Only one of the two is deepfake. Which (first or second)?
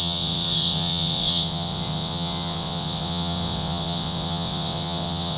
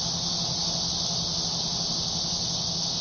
first